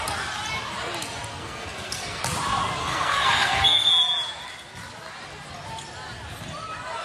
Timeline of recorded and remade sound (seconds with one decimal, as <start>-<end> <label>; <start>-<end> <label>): 0.0-1.3 recorded; 1.3-2.2 remade; 2.2-2.8 recorded; 2.8-3.9 remade; 3.9-7.0 recorded